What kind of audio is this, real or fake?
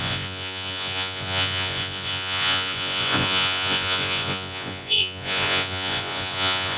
fake